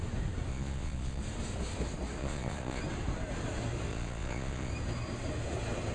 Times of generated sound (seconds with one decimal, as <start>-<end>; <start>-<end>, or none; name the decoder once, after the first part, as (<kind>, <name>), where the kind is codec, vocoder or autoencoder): 0.5-1.2 (vocoder, Vocos); 2.2-2.8; 3.9-4.7